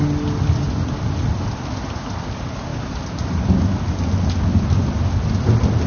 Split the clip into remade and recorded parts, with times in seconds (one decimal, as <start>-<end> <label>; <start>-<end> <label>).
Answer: 0.0-5.9 recorded